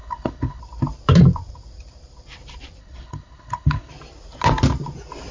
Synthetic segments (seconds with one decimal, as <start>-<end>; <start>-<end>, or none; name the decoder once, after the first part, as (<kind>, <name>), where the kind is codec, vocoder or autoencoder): 0.0-0.6 (codec, HILCodec); 2.8-3.9